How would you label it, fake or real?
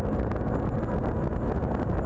real